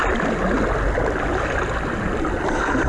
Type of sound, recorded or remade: recorded